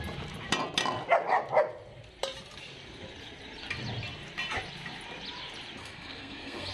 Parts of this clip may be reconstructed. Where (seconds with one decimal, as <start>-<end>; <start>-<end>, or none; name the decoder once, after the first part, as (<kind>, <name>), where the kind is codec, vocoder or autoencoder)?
5.8-6.7 (codec, SNAC)